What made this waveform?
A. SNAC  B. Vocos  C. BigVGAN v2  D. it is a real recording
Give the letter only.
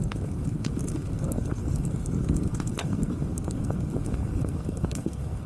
A